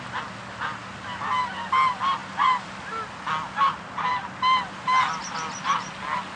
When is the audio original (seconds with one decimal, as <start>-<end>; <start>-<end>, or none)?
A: 0.0-6.4